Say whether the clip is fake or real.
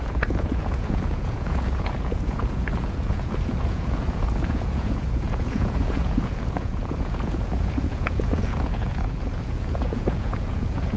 fake